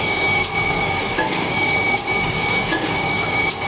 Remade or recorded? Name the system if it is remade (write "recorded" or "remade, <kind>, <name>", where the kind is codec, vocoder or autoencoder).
remade, codec, DAC